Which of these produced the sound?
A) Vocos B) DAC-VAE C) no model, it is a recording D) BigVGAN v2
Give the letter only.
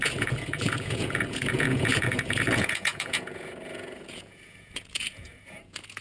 A